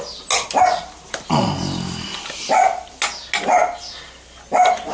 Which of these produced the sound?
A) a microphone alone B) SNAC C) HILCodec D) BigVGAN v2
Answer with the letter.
A